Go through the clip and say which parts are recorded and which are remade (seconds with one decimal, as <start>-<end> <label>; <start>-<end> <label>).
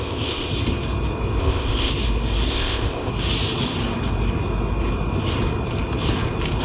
0.0-0.5 remade; 0.5-1.4 recorded; 1.4-1.9 remade; 1.9-2.5 recorded; 2.5-3.1 remade; 3.1-6.6 recorded